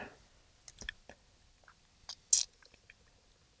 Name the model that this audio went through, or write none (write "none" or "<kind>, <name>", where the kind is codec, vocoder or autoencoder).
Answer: none